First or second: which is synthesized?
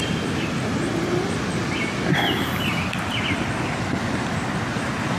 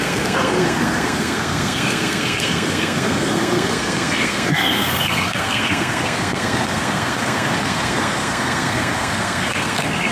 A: second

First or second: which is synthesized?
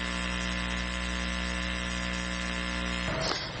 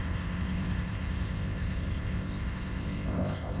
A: second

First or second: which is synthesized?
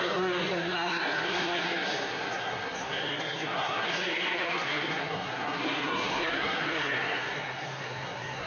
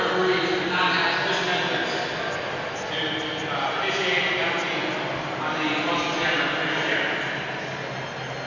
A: first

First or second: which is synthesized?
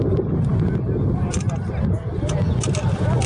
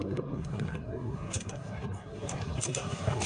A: second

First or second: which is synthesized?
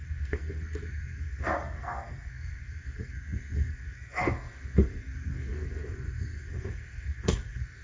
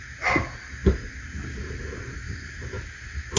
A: first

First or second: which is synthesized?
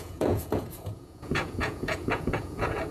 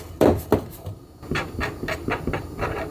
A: first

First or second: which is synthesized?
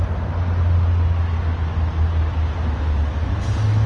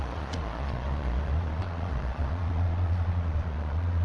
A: second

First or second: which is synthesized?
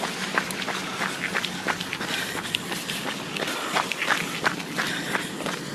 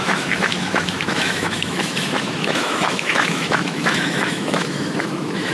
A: second